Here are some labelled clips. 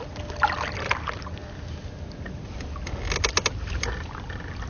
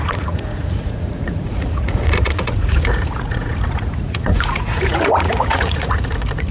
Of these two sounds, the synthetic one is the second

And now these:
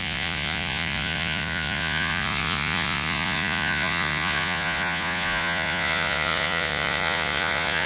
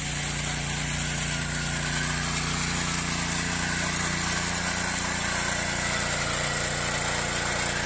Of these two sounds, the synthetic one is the first